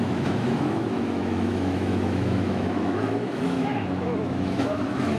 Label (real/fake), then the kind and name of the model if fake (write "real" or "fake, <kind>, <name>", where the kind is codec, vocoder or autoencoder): fake, autoencoder, DAC-VAE